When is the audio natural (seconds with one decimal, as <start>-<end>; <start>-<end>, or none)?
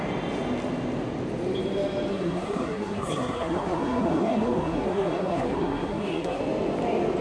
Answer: 0.0-2.1; 6.4-7.2